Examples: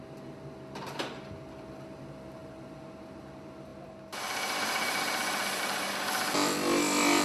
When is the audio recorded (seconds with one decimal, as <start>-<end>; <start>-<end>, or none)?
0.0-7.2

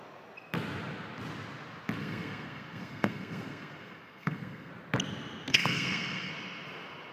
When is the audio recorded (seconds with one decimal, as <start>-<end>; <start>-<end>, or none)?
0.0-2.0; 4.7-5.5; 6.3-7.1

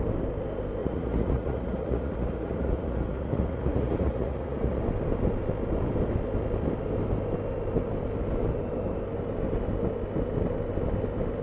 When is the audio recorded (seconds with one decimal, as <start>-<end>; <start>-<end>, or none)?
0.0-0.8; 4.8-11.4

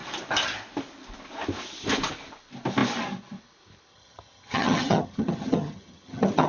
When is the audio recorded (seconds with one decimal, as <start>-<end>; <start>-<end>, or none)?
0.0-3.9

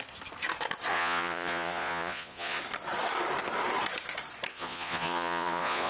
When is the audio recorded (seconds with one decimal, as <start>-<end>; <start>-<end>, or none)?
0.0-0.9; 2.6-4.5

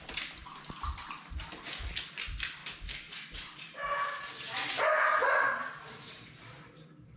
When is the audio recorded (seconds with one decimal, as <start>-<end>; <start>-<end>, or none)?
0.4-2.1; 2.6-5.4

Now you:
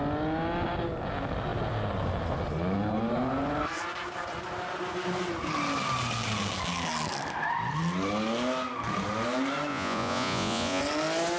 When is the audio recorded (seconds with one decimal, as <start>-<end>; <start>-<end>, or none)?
0.0-9.7; 10.8-11.4